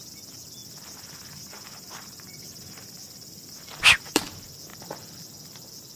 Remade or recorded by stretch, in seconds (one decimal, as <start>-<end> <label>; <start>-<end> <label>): 0.0-0.6 recorded; 0.6-4.2 remade; 4.2-6.0 recorded